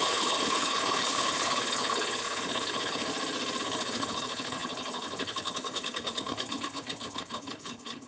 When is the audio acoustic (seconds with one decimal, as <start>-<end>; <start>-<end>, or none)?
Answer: 3.1-3.6